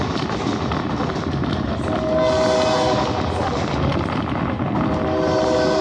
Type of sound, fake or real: real